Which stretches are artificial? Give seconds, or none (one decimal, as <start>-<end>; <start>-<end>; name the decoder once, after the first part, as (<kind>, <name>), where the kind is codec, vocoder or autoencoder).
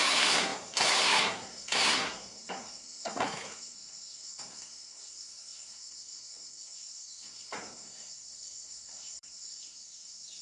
0.0-10.4 (codec, SNAC)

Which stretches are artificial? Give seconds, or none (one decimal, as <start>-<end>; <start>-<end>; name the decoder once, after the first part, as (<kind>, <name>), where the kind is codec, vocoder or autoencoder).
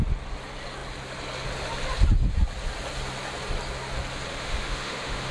4.3-5.3 (autoencoder, DAC-VAE)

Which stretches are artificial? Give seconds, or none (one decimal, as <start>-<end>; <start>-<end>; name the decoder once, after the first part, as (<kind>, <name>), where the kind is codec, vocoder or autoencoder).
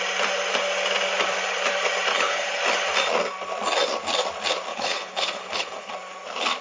2.1-2.6 (codec, HILCodec); 4.7-5.9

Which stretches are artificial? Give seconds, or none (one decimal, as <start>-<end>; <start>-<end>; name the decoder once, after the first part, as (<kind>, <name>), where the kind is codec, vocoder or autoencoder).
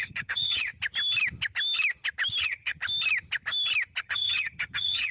0.0-0.7 (vocoder, HiFi-GAN); 2.4-2.8; 4.0-5.1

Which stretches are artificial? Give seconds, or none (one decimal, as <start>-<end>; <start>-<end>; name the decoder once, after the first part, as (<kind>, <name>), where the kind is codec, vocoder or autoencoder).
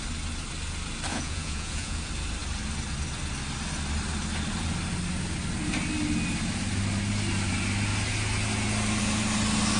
1.1-2.0 (vocoder, Vocos)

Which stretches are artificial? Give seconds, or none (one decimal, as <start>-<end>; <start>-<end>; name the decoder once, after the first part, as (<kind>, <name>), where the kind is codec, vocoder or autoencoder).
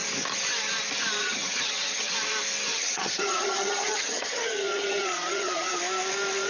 1.2-2.1 (vocoder, HiFi-GAN); 2.7-5.8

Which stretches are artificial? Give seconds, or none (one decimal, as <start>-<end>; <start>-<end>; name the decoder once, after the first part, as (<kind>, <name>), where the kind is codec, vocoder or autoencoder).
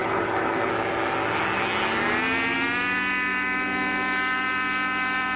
0.0-0.7 (codec, HILCodec)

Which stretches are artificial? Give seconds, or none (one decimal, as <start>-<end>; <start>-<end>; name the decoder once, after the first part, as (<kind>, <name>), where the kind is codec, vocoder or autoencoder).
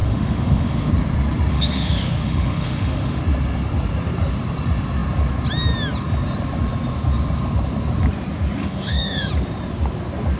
0.0-0.9 (autoencoder, DAC-VAE); 1.5-3.2; 8.6-9.3